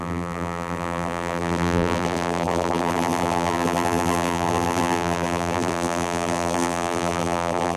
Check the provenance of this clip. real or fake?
fake